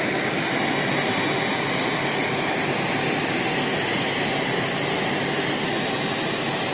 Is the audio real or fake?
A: real